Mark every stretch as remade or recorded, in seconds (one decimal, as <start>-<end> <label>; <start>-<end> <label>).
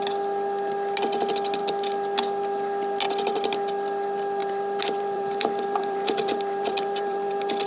0.0-4.4 recorded; 4.4-7.3 remade; 7.3-7.7 recorded